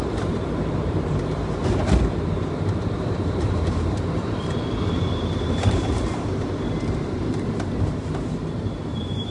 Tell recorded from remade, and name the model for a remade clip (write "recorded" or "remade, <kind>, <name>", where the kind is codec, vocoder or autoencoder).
remade, vocoder, BigVGAN v2